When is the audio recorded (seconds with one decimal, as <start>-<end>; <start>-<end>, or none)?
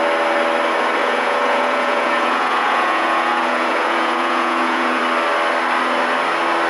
0.0-1.0; 5.0-6.7